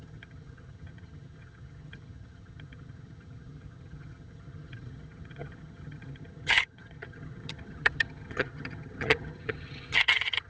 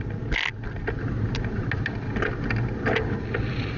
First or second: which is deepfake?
first